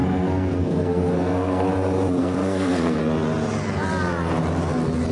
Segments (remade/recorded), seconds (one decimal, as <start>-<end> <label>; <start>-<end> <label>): 0.0-1.7 remade; 1.7-2.2 recorded; 2.2-3.0 remade; 3.0-5.1 recorded